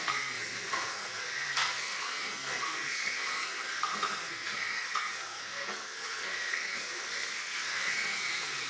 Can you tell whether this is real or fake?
fake